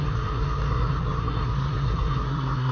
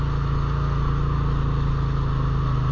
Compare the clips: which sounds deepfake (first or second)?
first